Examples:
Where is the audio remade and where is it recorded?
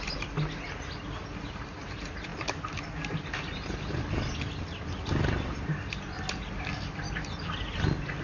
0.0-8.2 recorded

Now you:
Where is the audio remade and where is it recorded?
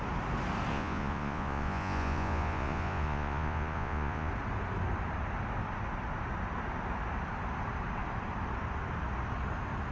0.0-0.7 recorded; 0.7-4.3 remade; 4.3-9.9 recorded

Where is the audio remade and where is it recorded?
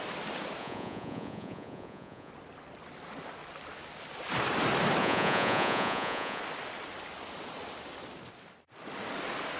0.0-0.6 recorded; 0.6-2.3 remade; 2.3-5.0 recorded; 5.0-6.4 remade; 6.4-9.6 recorded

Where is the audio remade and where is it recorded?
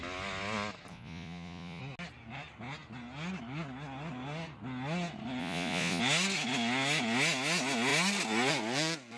0.0-0.9 recorded; 0.9-1.8 remade; 1.8-5.4 recorded; 5.4-6.0 remade; 6.0-9.2 recorded